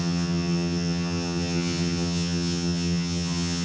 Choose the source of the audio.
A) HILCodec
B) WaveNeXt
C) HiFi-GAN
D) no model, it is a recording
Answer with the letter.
C